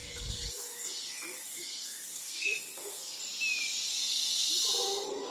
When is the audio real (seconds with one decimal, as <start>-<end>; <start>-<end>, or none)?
3.2-3.9; 4.5-5.3